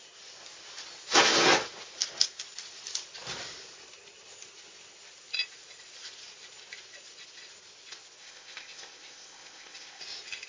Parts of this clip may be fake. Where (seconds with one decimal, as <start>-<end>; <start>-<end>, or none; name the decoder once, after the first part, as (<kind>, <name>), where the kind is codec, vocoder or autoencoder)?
8.2-10.0 (codec, ZipCodec)